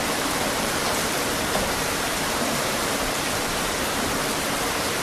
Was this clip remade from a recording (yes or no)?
yes